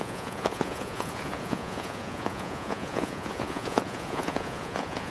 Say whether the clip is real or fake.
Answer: fake